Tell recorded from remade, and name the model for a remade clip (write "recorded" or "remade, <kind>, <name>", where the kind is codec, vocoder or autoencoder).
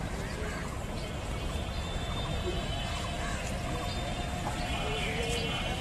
recorded